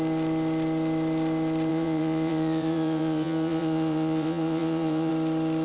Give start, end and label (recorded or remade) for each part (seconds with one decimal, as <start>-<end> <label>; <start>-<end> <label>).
0.0-1.7 recorded; 1.7-5.1 remade; 5.1-5.6 recorded